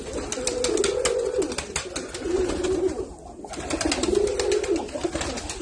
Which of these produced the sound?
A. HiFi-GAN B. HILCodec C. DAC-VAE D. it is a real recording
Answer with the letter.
D